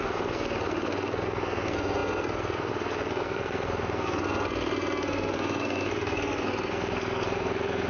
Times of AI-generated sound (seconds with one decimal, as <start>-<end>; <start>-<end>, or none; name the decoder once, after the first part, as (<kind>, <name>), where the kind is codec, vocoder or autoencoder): 0.0-7.9 (codec, SNAC)